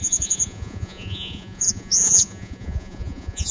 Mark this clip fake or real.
fake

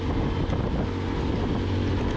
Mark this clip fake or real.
real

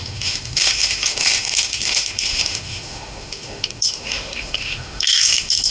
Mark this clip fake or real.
fake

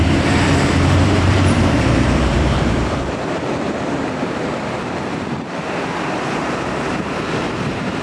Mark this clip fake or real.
fake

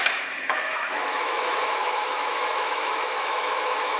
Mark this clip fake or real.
fake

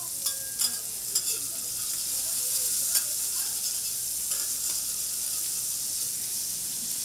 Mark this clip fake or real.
real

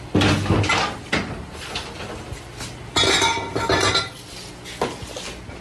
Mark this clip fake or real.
real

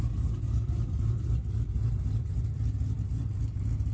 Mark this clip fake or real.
fake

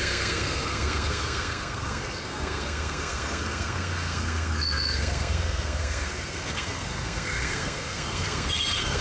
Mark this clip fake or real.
fake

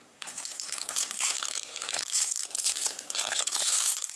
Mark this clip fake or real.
fake